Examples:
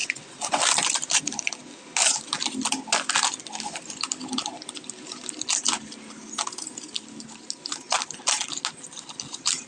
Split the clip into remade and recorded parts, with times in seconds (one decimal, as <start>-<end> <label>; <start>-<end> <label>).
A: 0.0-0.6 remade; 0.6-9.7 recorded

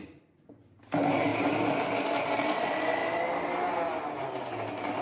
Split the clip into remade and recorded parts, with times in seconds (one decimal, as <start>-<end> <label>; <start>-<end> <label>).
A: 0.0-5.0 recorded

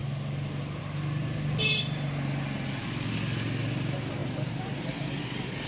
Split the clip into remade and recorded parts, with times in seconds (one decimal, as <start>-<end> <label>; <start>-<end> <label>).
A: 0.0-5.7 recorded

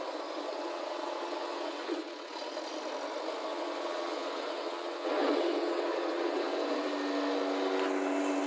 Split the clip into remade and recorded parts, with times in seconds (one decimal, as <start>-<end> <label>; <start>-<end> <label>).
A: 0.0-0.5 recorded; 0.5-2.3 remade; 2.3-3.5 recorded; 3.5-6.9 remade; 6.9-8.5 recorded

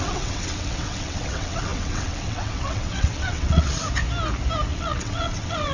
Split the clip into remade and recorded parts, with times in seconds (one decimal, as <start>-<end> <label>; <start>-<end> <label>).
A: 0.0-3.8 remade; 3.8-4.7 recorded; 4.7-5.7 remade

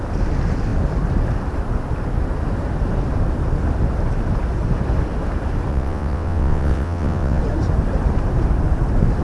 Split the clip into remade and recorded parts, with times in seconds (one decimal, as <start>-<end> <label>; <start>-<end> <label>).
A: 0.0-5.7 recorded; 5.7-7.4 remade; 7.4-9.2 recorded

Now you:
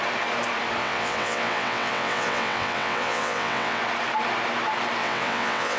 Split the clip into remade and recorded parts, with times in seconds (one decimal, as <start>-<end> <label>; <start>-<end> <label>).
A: 0.0-0.8 recorded; 0.8-3.8 remade; 3.8-5.0 recorded; 5.0-5.8 remade

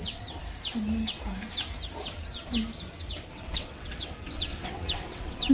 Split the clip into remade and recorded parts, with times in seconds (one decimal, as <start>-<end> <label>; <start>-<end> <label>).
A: 0.0-0.4 remade; 0.4-3.3 recorded; 3.3-5.5 remade